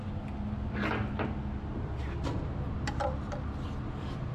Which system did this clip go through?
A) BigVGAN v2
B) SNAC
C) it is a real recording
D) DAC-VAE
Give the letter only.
C